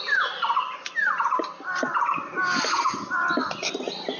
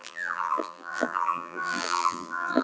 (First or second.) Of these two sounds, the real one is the first